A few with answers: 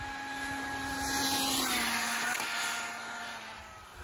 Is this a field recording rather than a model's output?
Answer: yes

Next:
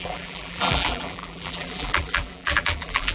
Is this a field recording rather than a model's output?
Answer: no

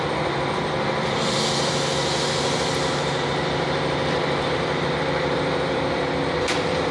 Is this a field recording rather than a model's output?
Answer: no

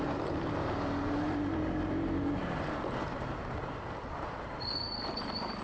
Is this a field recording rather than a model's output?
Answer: no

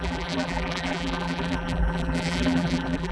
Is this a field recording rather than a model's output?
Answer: no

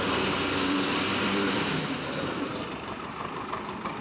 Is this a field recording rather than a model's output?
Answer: no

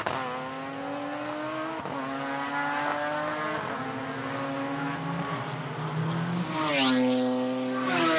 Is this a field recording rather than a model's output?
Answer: yes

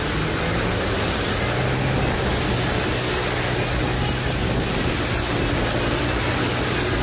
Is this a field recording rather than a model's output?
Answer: yes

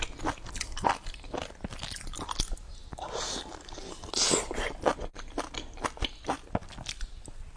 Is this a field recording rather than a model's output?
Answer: yes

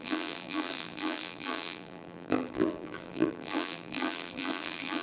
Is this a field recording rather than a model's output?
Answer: no